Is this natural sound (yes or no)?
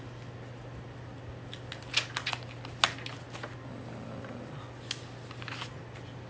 yes